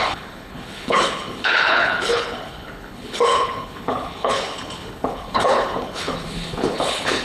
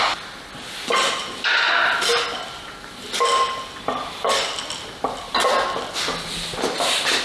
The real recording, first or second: second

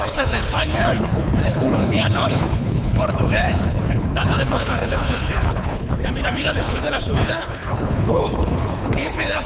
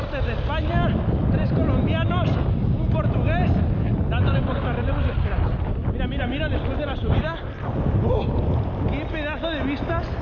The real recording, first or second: second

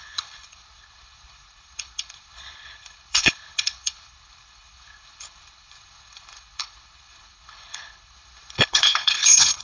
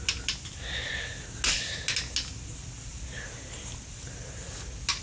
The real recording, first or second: second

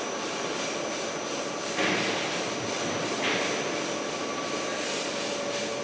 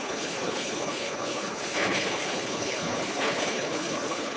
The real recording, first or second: first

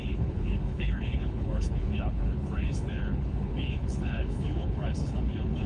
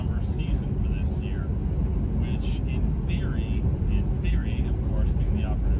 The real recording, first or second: second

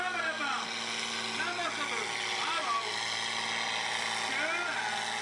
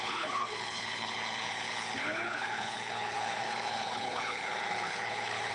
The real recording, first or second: first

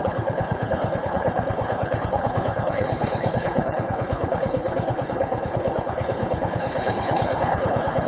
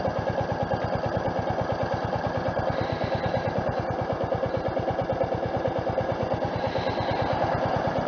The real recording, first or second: second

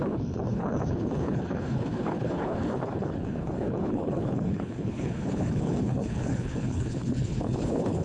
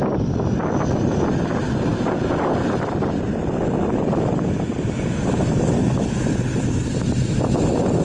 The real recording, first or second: second